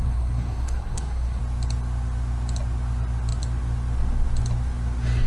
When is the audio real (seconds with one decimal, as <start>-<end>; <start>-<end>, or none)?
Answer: 1.4-5.3